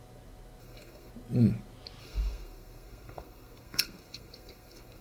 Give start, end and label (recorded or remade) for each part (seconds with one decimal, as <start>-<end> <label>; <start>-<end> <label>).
0.0-0.6 recorded; 0.6-1.1 remade; 1.1-2.0 recorded; 2.0-5.0 remade